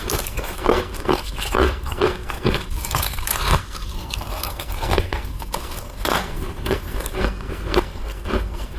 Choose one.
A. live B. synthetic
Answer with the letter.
B